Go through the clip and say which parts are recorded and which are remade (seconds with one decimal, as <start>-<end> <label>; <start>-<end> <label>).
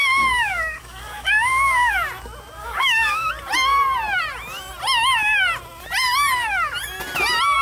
0.0-1.9 remade; 1.9-2.6 recorded; 2.6-3.3 remade; 3.3-7.6 recorded